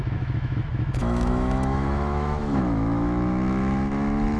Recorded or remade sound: remade